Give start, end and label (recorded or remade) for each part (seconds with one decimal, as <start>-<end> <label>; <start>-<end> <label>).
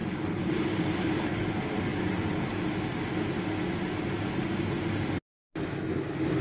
0.0-6.4 recorded